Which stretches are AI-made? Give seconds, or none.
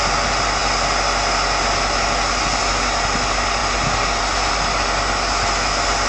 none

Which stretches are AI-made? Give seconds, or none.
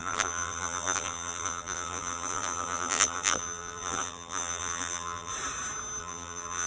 0.0-5.3 (vocoder, BigVGAN v2); 6.0-6.7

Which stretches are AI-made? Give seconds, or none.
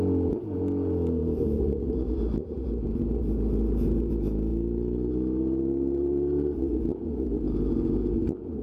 none